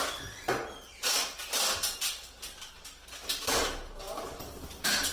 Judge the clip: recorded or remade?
recorded